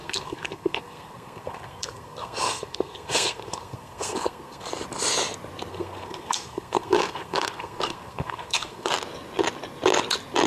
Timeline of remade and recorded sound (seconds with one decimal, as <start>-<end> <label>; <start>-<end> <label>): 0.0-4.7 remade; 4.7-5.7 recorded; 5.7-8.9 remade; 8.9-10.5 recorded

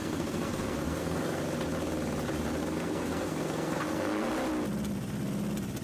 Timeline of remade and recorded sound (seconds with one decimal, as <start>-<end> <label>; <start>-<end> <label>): 0.0-1.4 remade; 1.4-2.6 recorded; 2.6-4.3 remade; 4.3-5.8 recorded

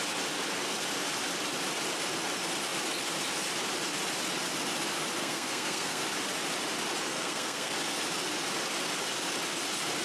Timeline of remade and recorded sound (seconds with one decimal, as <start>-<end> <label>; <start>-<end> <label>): 0.0-5.2 recorded; 5.2-6.0 remade; 6.0-7.1 recorded; 7.1-7.7 remade; 7.7-10.0 recorded